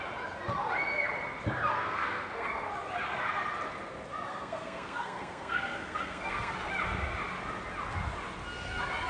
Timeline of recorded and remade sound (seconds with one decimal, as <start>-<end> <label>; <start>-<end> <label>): 0.0-1.7 recorded; 1.7-2.7 remade; 2.7-4.3 recorded; 4.3-6.5 remade; 6.5-9.1 recorded